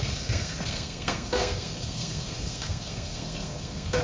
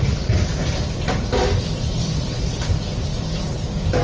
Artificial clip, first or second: first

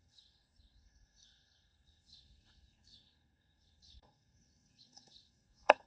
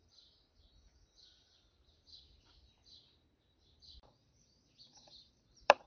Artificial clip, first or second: first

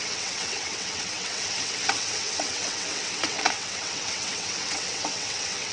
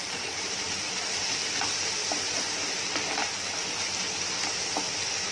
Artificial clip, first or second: first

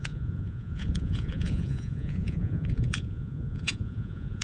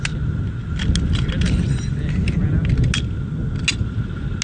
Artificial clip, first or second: first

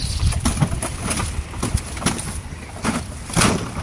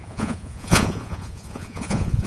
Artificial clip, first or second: second